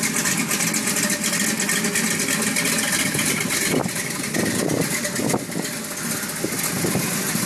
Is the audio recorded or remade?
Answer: recorded